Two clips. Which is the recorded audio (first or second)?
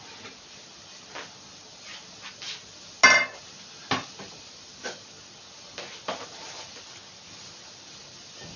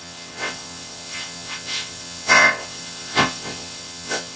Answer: first